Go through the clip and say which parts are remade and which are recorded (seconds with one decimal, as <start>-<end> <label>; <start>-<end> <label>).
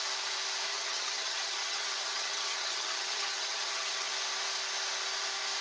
0.0-0.7 recorded; 0.7-4.1 remade; 4.1-5.6 recorded